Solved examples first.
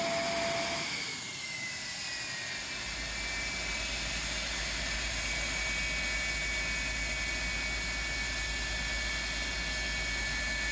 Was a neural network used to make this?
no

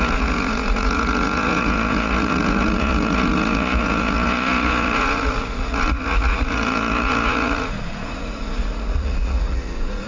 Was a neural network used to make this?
yes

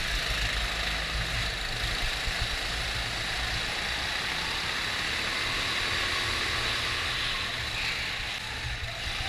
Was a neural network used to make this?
no